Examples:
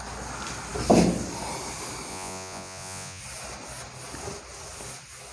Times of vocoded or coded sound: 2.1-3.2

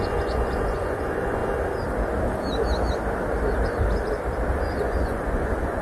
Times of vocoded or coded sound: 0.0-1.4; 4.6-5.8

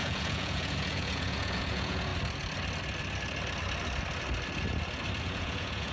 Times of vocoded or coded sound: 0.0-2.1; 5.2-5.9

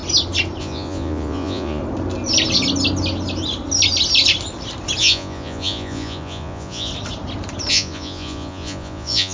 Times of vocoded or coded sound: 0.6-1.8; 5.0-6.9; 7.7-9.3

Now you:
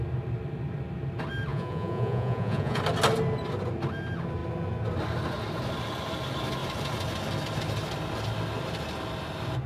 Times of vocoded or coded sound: 1.5-2.8

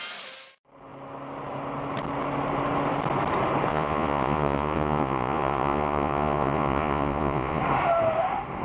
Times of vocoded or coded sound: 3.7-7.6

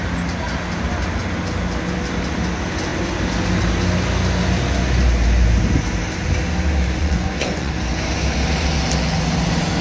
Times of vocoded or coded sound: 7.0-7.7

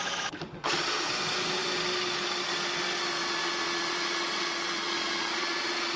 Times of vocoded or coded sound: 3.2-6.0